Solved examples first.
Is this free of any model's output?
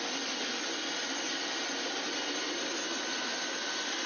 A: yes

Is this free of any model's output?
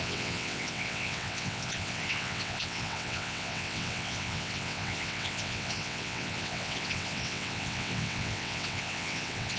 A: no